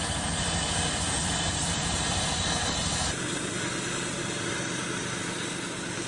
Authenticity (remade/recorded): recorded